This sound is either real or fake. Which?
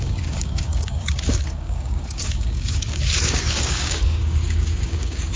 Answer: fake